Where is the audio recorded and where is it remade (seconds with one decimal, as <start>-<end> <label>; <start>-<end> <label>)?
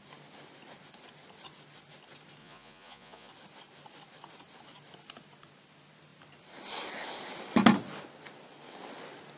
0.0-2.4 recorded; 2.4-3.3 remade; 3.3-9.4 recorded